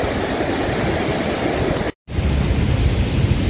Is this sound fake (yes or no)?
no